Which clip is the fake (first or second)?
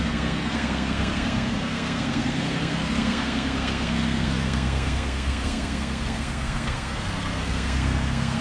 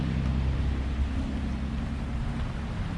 first